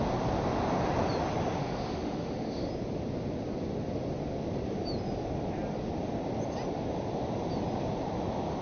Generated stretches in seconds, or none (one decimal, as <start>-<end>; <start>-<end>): 1.6-2.7